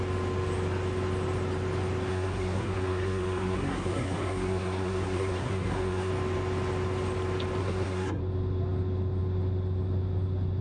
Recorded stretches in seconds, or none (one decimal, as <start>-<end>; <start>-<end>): 0.0-2.1; 6.1-7.6; 8.2-10.6